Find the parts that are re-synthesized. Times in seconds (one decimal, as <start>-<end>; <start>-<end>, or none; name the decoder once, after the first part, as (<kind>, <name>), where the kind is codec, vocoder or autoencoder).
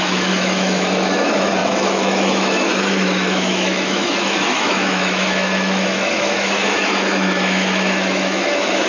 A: 0.0-8.9 (autoencoder, DAC-VAE)